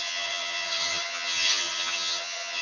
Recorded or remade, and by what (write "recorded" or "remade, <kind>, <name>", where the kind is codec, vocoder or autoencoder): remade, vocoder, HiFi-GAN